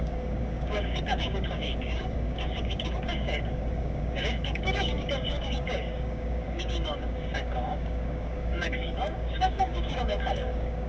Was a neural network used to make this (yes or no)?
yes